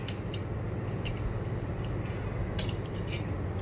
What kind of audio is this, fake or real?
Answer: real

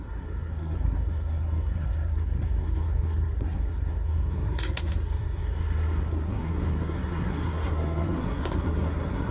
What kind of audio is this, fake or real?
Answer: fake